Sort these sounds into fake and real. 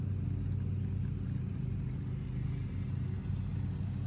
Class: real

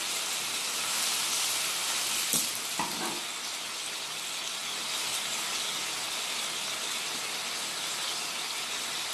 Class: real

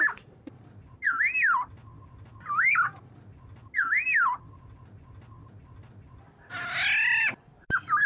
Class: real